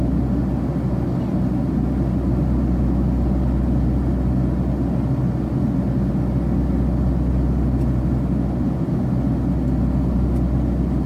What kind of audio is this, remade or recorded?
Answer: recorded